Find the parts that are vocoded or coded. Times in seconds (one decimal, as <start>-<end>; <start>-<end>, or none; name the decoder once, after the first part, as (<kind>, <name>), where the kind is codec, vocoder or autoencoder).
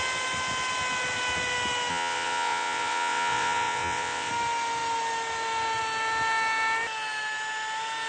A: 1.9-4.3 (vocoder, WaveNeXt)